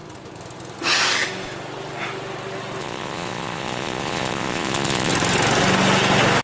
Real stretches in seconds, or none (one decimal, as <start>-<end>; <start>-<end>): 0.0-2.8; 5.1-6.4